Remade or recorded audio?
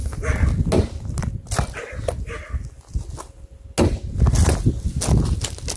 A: recorded